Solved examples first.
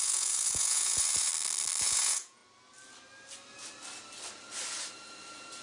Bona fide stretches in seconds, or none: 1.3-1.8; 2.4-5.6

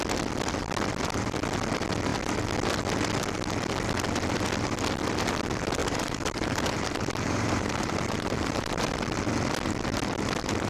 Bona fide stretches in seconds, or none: 0.0-5.8; 8.9-10.7

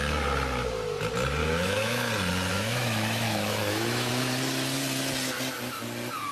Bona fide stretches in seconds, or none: 0.0-1.4; 2.1-2.5; 4.1-6.3

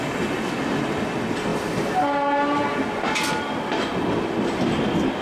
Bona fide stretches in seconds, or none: 0.0-5.2

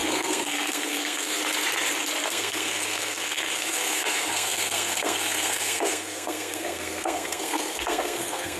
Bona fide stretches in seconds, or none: 1.4-2.3

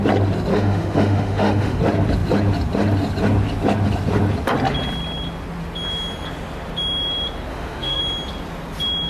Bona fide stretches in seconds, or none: 0.0-0.5; 1.8-7.5; 8.0-9.1

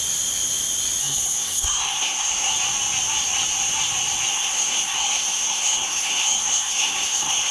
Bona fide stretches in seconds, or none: 0.0-1.0; 2.5-4.3